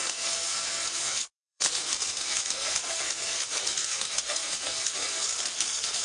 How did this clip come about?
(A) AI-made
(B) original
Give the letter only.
A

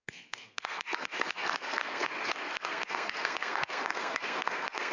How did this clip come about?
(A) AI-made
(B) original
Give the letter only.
A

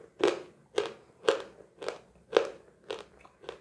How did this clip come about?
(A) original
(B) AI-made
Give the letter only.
A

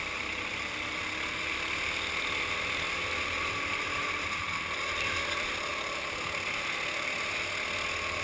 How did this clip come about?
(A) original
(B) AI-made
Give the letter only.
A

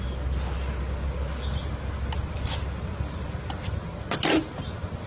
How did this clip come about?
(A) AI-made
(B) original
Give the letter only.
B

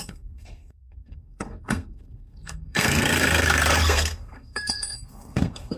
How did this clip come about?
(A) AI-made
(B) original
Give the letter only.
A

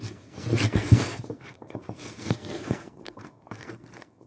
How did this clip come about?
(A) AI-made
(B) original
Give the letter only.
A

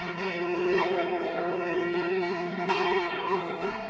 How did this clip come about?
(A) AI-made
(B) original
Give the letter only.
A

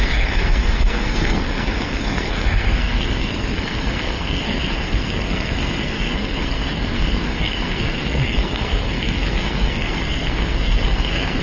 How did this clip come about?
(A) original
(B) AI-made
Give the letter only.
B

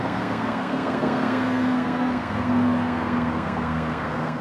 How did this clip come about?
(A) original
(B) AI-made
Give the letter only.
B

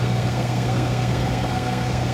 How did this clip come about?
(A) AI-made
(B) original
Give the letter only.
A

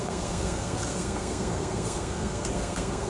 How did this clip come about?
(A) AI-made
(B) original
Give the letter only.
A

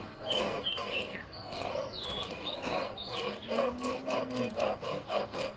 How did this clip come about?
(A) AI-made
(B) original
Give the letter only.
A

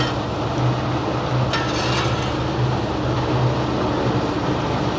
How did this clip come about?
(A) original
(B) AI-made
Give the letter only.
A